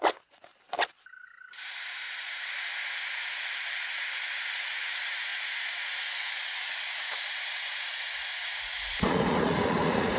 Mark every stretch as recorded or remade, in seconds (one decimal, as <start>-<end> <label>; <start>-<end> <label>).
0.0-0.5 remade; 0.5-3.3 recorded; 3.3-10.2 remade